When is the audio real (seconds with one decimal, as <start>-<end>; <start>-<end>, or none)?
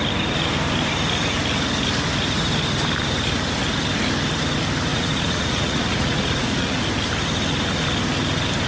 0.0-4.9; 6.8-8.7